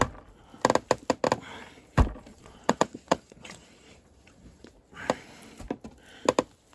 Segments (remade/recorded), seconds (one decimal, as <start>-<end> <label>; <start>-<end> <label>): 0.0-2.3 recorded; 2.3-4.7 remade; 4.7-6.7 recorded